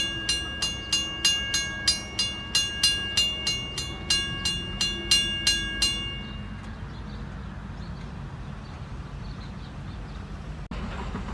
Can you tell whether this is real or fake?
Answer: real